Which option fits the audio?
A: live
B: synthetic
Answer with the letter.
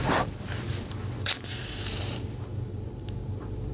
B